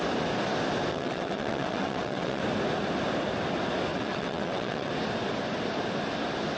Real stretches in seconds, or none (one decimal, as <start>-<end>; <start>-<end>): 0.0-0.9; 2.4-3.9; 4.9-6.6